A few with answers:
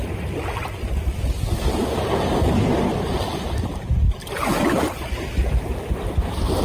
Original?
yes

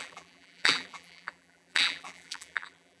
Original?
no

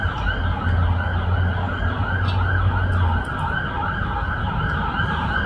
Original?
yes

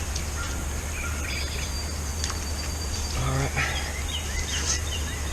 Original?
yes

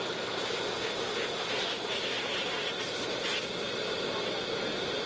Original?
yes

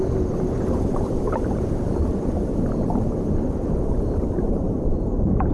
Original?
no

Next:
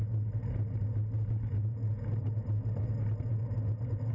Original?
yes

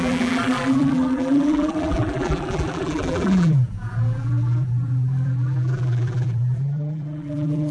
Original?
no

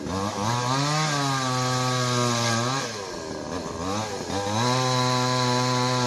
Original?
yes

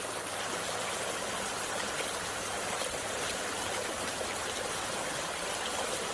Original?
yes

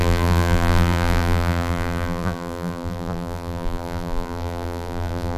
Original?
no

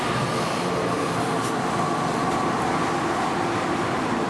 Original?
yes